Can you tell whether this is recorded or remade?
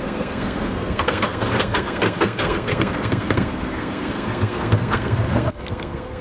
remade